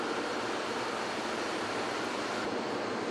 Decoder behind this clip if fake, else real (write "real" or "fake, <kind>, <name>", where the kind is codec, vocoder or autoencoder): real